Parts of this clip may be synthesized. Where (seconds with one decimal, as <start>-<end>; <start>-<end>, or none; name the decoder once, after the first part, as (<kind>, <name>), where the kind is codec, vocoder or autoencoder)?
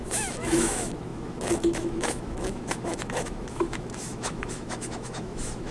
0.0-5.7 (autoencoder, DAC-VAE)